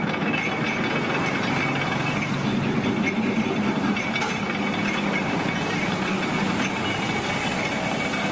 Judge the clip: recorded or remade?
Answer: recorded